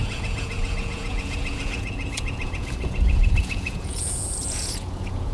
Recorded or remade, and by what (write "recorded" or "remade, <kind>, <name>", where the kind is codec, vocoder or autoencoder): remade, vocoder, Vocos